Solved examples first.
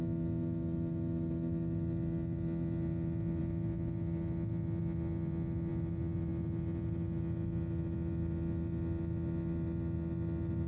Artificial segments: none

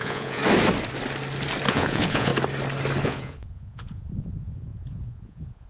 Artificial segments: 0.0-0.4; 1.7-2.3; 3.0-5.7

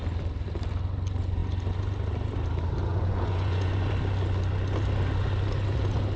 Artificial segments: 2.9-3.9

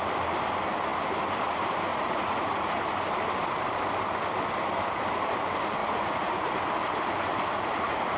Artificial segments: 1.9-2.8; 5.8-6.6; 7.5-8.2

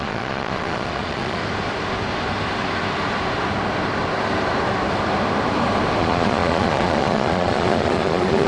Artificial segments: 0.0-1.4; 6.0-8.5

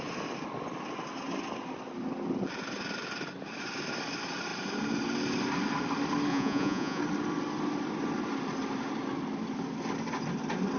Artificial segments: 6.3-7.0